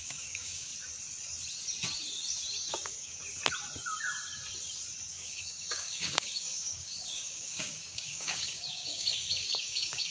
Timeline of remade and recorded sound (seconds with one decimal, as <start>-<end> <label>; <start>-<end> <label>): 0.0-0.7 remade; 0.7-2.7 recorded; 2.7-3.2 remade; 3.2-5.1 recorded; 5.1-10.1 remade